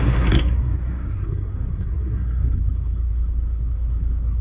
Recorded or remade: remade